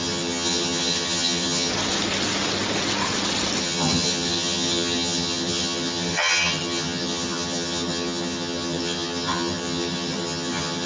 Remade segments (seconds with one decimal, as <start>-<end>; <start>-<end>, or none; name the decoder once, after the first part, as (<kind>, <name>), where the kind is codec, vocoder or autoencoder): 0.0-1.7 (vocoder, HiFi-GAN); 3.6-10.9